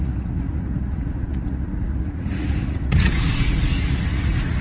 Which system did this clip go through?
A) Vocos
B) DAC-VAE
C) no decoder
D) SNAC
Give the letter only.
A